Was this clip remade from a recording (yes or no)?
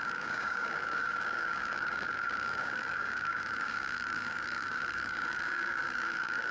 yes